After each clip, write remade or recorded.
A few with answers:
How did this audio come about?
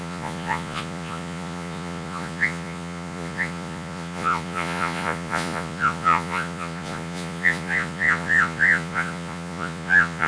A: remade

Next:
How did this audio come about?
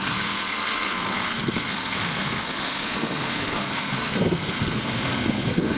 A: remade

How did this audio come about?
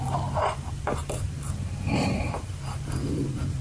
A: remade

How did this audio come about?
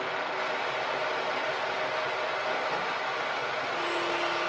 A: recorded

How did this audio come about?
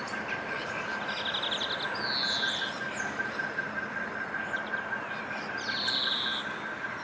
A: recorded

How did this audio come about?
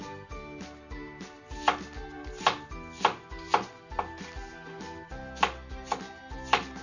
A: recorded